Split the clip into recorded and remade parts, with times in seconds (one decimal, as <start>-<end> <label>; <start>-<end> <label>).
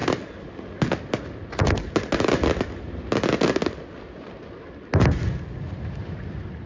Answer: 0.0-6.7 recorded